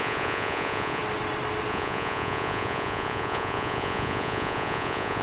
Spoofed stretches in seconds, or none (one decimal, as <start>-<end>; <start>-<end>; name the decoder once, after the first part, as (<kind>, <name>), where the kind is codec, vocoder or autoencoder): 0.0-1.0 (vocoder, Vocos); 1.7-5.2